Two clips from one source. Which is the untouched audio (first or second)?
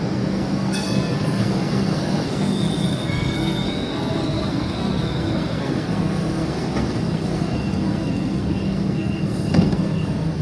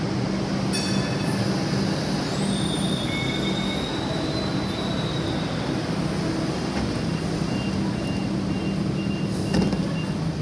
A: second